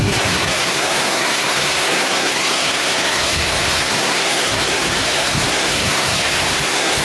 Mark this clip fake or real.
fake